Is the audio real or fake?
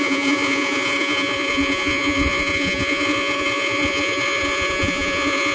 fake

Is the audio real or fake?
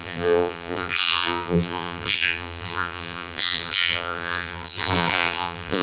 fake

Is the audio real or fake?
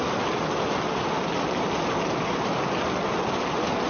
real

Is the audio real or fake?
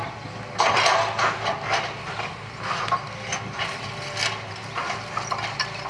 real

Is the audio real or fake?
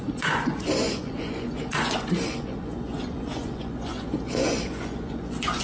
fake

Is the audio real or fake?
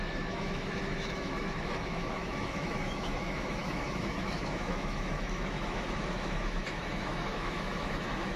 fake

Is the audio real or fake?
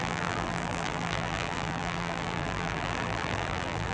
fake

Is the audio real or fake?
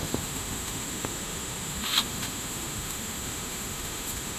fake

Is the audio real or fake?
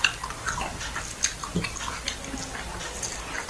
real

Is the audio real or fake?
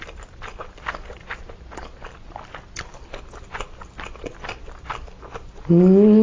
real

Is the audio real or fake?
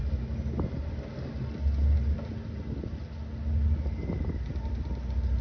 real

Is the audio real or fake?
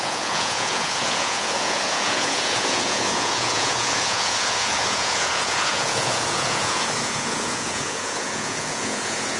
fake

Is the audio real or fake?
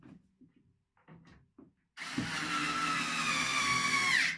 real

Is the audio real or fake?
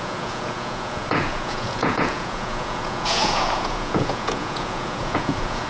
fake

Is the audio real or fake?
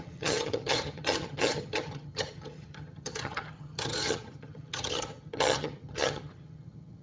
fake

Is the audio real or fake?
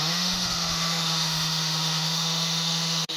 fake